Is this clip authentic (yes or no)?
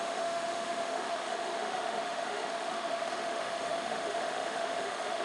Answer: no